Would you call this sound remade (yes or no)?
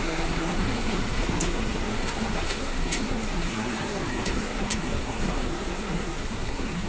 yes